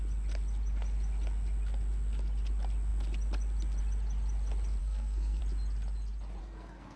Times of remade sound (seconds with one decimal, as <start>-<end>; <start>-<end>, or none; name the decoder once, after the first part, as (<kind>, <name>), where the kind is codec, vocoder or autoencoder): 4.8-5.4 (codec, SNAC); 6.4-7.0